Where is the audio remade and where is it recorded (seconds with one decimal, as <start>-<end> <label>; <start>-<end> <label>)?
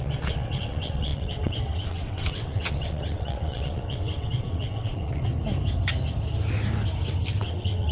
0.0-5.3 remade; 5.3-7.4 recorded; 7.4-7.9 remade